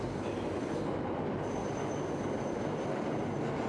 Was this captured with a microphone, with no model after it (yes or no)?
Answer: yes